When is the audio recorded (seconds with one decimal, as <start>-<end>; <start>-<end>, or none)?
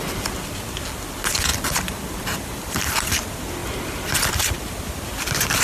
0.0-1.5; 3.2-5.6